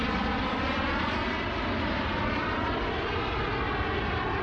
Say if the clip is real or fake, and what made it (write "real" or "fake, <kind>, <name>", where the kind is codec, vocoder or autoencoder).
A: real